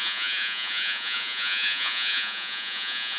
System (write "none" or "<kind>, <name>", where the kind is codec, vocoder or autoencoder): vocoder, Vocos